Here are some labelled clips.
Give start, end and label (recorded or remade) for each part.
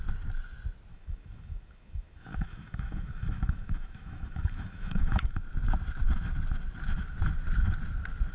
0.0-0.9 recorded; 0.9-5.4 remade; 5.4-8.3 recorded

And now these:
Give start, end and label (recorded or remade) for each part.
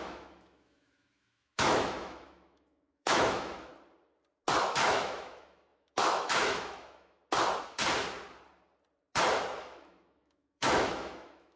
0.0-3.7 remade; 3.7-4.6 recorded; 4.6-7.2 remade; 7.2-9.6 recorded; 9.6-11.6 remade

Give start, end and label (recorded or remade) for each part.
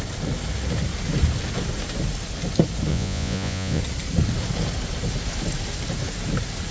0.0-2.9 recorded; 2.9-3.8 remade; 3.8-6.7 recorded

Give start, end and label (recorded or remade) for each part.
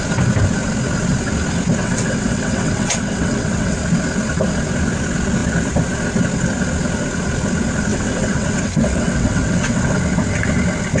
0.0-1.8 recorded; 1.8-3.8 remade; 3.8-7.9 recorded; 7.9-10.0 remade; 10.0-11.0 recorded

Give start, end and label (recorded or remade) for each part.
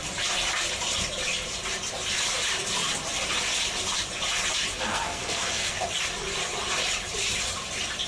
0.0-4.7 recorded; 4.7-5.8 remade; 5.8-8.1 recorded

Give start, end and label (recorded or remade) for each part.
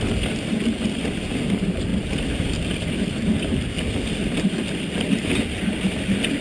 0.0-6.4 recorded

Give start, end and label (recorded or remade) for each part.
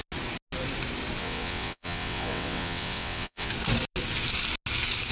0.0-1.2 recorded; 1.2-3.5 remade; 3.5-5.1 recorded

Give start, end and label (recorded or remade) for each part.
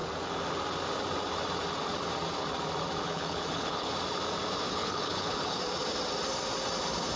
0.0-3.0 recorded; 3.0-3.9 remade; 3.9-4.7 recorded; 4.7-5.6 remade; 5.6-7.2 recorded